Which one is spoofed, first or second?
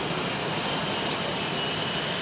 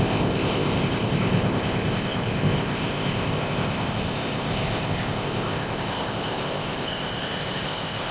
second